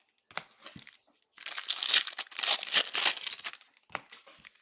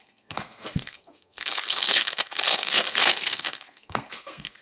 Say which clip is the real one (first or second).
first